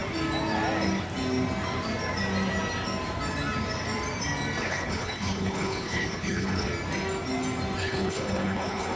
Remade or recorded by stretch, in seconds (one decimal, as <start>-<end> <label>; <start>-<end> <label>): 0.0-4.6 recorded; 4.6-6.7 remade; 6.7-7.8 recorded; 7.8-9.0 remade